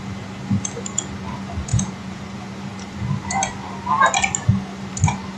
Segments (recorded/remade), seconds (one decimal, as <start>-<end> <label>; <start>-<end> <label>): 0.0-1.7 recorded; 1.7-2.2 remade; 2.2-5.4 recorded